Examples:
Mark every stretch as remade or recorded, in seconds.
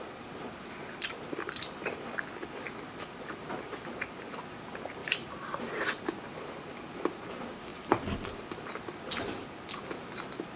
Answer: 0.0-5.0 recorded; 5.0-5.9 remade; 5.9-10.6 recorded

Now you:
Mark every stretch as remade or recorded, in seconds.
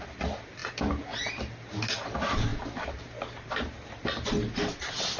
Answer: 0.0-5.2 recorded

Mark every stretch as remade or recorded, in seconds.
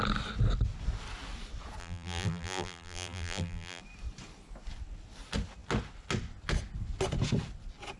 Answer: 0.0-1.8 recorded; 1.8-3.8 remade; 3.8-8.0 recorded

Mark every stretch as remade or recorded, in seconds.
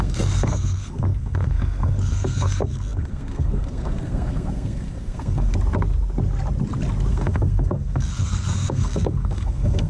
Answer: 0.0-5.5 remade; 5.5-7.1 recorded; 7.1-9.9 remade